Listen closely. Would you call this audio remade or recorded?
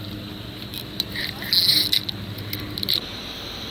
recorded